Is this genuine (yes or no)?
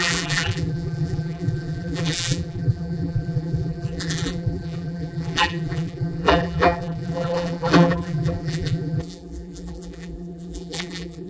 no